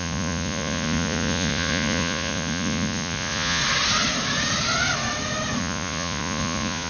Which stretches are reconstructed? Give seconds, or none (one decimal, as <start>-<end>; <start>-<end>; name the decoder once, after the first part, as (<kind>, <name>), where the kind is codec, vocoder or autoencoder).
0.0-3.6 (vocoder, Vocos); 5.6-6.9